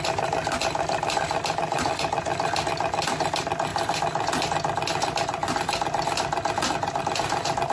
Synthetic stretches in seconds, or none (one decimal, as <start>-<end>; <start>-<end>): none

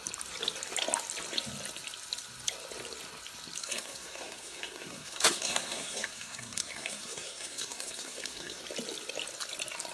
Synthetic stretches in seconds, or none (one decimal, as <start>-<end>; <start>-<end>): 3.6-8.6

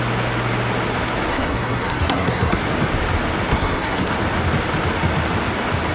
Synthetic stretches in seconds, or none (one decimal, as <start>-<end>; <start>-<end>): 1.3-2.6; 3.5-4.1

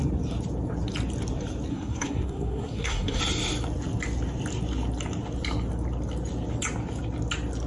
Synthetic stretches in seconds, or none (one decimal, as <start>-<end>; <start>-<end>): 1.7-3.2

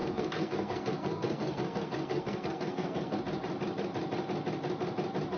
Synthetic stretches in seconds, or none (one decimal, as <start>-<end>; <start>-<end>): 0.0-3.2